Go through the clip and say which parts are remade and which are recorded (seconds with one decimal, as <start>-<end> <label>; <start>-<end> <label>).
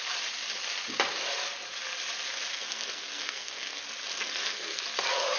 0.0-2.5 recorded; 2.5-3.8 remade; 3.8-4.2 recorded; 4.2-4.8 remade; 4.8-5.4 recorded